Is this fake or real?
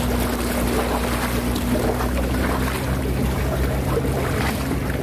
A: real